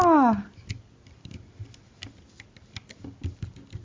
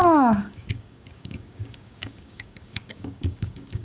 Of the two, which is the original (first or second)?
first